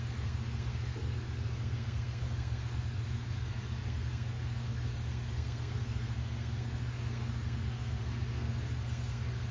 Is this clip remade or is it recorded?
remade